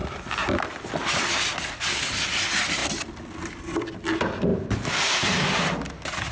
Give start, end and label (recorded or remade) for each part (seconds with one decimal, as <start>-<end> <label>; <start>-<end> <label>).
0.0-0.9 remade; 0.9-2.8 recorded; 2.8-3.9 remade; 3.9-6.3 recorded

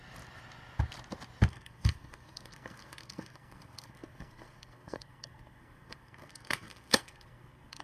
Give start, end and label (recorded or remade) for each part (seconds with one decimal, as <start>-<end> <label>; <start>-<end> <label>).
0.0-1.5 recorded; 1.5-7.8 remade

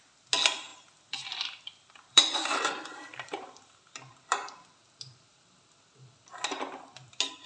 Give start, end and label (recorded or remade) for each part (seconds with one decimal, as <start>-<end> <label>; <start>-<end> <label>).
0.0-0.7 recorded; 0.7-3.8 remade; 3.8-7.5 recorded

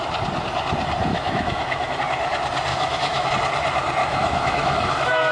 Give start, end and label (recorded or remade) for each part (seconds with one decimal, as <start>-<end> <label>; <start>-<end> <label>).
0.0-1.1 recorded; 1.1-2.0 remade; 2.0-2.7 recorded; 2.7-3.3 remade; 3.3-4.0 recorded; 4.0-5.3 remade

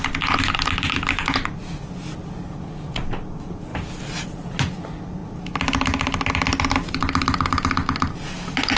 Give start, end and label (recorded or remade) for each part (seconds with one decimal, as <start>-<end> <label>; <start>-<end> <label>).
0.0-8.8 recorded

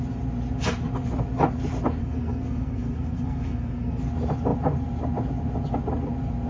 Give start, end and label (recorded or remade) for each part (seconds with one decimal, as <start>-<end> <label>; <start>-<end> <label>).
0.0-2.0 recorded; 2.0-4.0 remade; 4.0-6.5 recorded

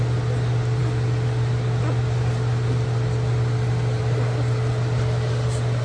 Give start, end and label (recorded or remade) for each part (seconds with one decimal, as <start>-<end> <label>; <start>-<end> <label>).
0.0-5.8 recorded

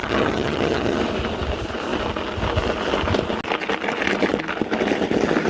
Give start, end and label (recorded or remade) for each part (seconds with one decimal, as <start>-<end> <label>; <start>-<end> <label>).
0.0-1.0 remade; 1.0-5.5 recorded